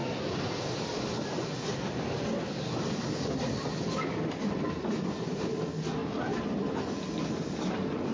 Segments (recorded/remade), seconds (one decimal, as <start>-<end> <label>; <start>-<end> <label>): 0.0-8.1 recorded